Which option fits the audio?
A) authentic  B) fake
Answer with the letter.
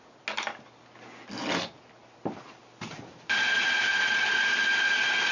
A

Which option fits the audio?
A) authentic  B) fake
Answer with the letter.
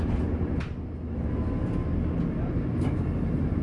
A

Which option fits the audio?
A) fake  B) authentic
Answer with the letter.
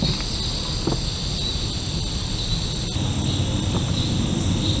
B